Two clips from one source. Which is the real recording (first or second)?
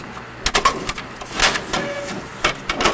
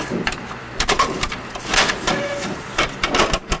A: first